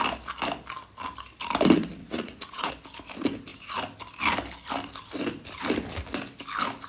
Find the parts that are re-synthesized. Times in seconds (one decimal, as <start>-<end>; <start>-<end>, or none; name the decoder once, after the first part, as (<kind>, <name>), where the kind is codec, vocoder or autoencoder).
2.0-2.7 (vocoder, Vocos)